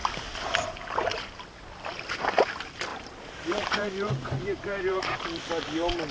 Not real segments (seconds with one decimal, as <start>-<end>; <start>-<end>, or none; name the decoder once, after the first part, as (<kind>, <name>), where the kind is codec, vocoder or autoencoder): 2.9-5.0 (vocoder, BigVGAN v2)